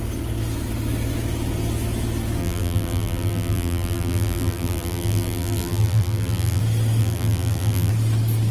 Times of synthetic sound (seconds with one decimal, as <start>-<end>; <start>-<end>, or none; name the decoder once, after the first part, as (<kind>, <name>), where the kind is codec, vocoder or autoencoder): 2.4-6.6 (vocoder, BigVGAN v2); 7.0-7.9